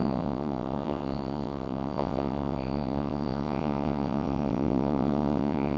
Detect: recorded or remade remade